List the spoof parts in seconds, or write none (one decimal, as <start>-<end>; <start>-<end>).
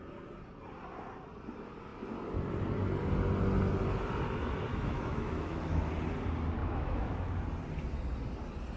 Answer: 4.7-5.9; 6.6-7.4